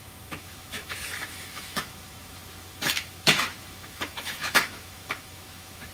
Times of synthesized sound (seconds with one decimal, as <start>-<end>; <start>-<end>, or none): 0.0-5.9